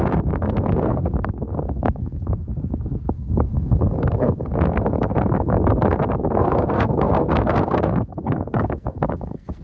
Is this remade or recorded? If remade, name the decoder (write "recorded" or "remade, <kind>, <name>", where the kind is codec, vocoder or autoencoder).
remade, codec, SNAC